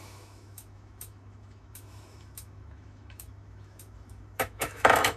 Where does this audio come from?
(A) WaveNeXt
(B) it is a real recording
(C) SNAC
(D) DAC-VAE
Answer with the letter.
D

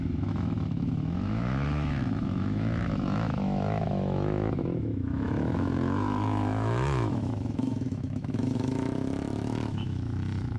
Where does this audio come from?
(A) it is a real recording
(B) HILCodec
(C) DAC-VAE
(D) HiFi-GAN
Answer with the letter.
C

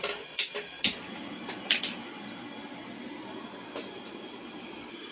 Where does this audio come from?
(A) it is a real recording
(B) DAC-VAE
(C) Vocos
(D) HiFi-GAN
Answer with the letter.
A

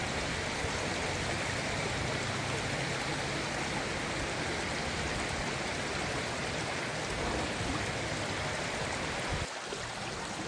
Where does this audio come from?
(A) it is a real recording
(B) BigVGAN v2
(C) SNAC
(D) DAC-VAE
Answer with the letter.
A